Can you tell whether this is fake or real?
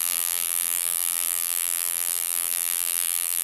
fake